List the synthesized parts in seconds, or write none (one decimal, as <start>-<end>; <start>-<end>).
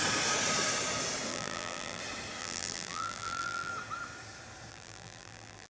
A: 1.3-2.0; 2.4-3.7; 4.7-5.7